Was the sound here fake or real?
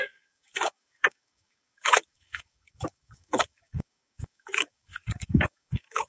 fake